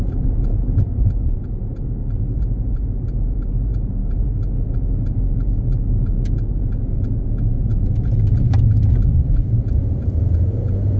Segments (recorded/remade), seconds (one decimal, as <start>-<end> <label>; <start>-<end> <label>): 0.0-11.0 remade